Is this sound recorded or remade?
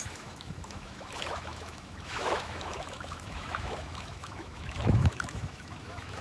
remade